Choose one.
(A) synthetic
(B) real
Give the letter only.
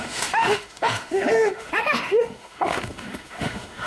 A